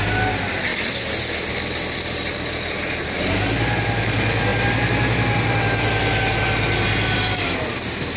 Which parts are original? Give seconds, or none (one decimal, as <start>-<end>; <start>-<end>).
0.0-8.2